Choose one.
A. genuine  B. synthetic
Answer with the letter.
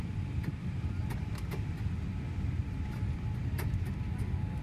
A